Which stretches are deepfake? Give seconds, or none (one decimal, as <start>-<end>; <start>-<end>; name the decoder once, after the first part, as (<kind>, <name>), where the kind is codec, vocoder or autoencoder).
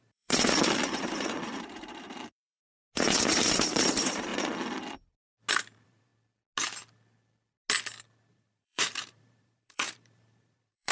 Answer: 0.0-2.6 (vocoder, BigVGAN v2); 3.2-4.3; 5.5-6.1; 8.3-10.9